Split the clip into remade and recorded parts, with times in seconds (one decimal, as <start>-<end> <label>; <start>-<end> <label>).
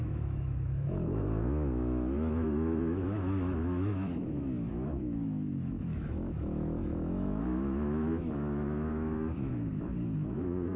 0.0-10.8 remade